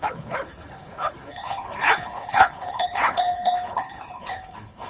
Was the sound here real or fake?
fake